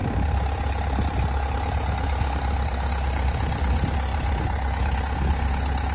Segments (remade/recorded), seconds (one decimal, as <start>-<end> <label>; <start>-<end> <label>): 0.0-5.9 recorded